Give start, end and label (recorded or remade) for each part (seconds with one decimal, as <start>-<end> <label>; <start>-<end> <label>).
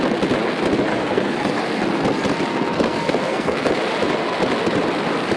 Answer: 0.0-0.9 recorded; 0.9-1.5 remade; 1.5-2.5 recorded; 2.5-3.7 remade; 3.7-5.4 recorded